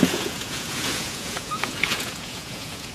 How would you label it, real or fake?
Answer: fake